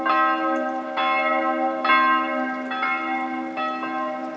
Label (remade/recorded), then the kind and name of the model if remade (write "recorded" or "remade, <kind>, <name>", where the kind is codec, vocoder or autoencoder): recorded